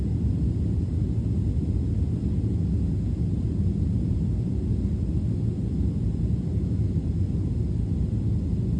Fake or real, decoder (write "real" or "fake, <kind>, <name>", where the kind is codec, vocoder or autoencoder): real